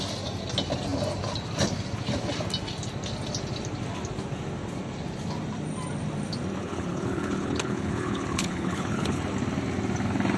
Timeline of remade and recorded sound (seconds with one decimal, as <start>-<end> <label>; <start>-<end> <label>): 0.0-6.6 recorded; 6.6-9.2 remade; 9.2-10.4 recorded